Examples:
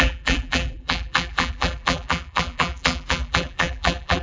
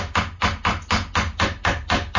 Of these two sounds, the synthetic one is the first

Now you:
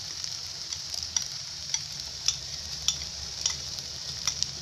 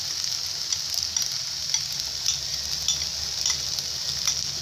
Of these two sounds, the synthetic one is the first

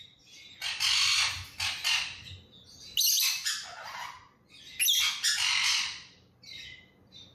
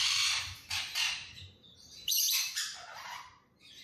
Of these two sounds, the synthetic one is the second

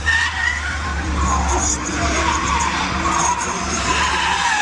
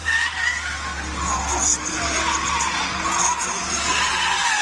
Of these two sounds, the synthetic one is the first